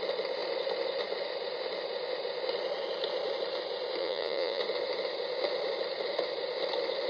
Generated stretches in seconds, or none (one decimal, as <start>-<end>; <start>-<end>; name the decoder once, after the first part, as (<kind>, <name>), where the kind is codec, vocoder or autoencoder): 4.0-4.6 (vocoder, Vocos)